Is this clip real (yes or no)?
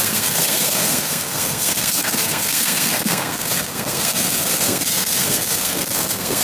no